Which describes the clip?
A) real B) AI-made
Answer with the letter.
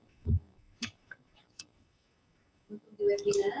B